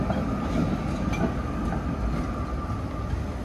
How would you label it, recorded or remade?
recorded